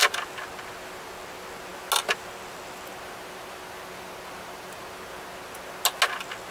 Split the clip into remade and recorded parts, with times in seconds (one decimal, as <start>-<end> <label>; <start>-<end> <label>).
0.0-6.5 recorded